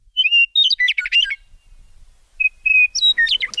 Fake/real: real